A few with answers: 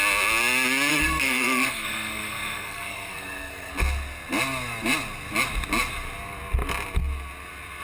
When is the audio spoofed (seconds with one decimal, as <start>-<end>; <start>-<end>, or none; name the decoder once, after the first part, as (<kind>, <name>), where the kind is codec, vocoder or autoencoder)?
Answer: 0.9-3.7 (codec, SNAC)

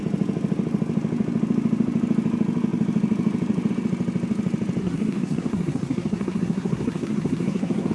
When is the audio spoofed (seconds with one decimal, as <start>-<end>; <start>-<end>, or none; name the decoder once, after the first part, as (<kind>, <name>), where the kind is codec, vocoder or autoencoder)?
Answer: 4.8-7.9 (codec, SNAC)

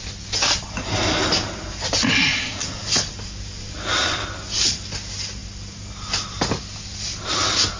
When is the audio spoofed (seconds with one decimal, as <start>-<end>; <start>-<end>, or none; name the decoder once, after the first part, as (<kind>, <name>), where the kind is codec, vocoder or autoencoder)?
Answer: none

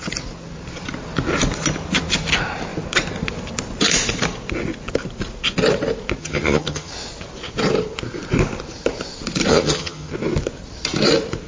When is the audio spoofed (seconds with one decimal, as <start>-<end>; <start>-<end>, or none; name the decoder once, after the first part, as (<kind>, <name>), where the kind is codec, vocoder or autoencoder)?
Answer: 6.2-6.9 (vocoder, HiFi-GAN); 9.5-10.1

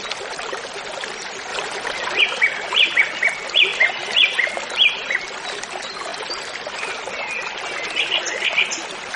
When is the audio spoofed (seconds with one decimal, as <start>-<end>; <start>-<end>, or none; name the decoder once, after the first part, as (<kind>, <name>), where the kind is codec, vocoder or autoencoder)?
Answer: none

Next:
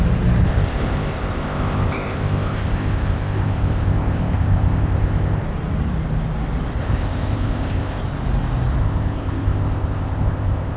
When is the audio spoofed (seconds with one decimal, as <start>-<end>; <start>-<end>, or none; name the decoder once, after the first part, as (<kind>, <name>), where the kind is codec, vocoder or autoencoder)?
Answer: 0.4-5.4 (codec, ZipCodec); 6.8-8.0; 8.8-10.8